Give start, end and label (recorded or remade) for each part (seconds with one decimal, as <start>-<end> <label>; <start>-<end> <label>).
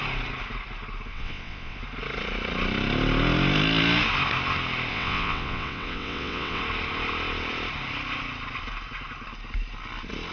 0.0-1.1 recorded; 1.1-1.8 remade; 1.8-4.9 recorded; 4.9-6.6 remade; 6.6-10.3 recorded